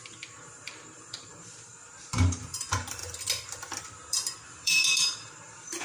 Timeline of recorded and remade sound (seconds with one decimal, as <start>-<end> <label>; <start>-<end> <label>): 0.0-3.0 remade; 3.0-3.8 recorded; 3.8-5.8 remade